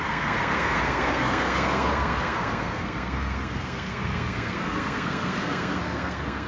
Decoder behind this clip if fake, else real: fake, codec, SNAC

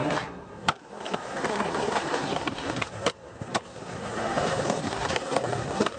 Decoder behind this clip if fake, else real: fake, codec, SNAC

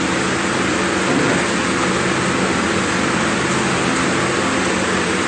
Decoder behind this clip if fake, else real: real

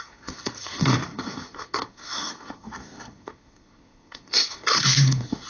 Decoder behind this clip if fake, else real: fake, codec, SNAC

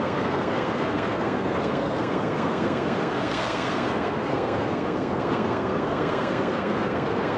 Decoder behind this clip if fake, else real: fake, codec, SNAC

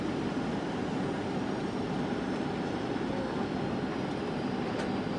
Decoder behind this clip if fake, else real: real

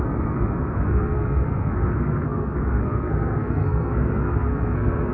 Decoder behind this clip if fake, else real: fake, codec, SNAC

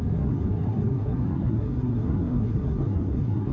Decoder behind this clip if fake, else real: fake, codec, SNAC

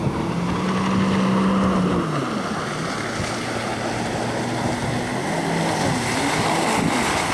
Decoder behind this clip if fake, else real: real